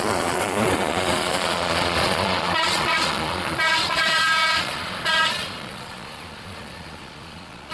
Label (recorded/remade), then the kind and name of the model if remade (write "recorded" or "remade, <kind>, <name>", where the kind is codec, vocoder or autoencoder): remade, vocoder, Vocos